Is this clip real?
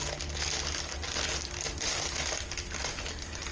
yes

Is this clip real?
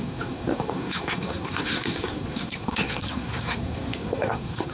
no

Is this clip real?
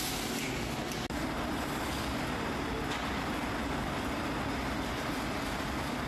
yes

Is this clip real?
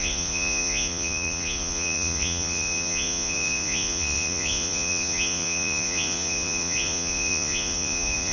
no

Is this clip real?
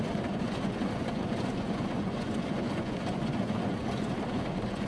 no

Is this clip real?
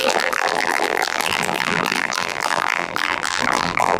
no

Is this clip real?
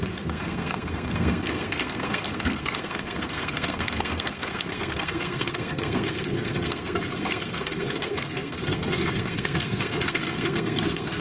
no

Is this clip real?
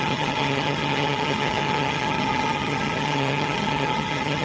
no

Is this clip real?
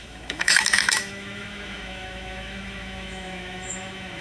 no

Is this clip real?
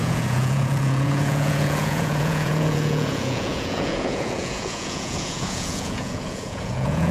no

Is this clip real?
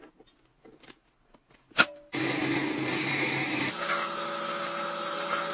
yes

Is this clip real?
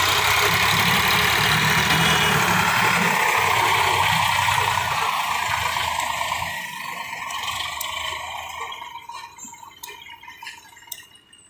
yes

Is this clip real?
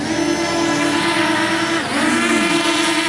yes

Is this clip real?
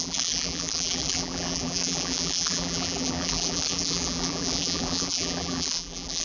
no